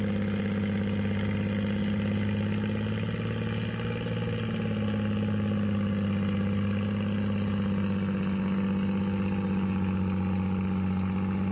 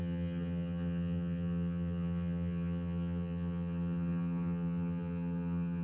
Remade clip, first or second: second